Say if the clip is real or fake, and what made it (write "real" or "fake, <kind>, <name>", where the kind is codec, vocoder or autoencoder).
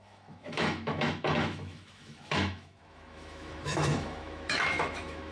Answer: fake, autoencoder, DAC-VAE